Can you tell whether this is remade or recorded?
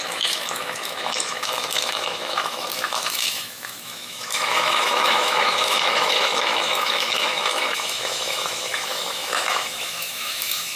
remade